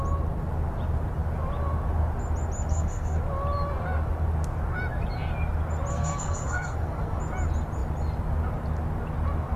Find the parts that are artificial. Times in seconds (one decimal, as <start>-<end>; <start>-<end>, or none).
2.7-3.2; 5.9-7.2